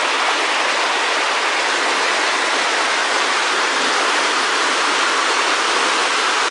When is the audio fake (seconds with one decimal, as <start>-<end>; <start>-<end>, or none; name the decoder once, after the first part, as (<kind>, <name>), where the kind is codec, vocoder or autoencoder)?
3.0-5.6 (vocoder, BigVGAN v2)